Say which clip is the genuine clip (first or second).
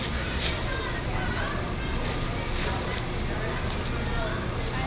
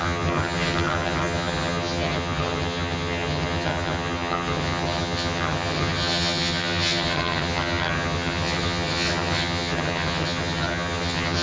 first